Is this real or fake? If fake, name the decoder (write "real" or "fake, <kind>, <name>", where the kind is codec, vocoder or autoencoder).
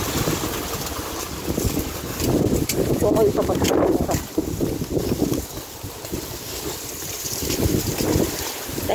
real